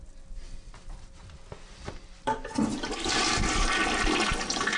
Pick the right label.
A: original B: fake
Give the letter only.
A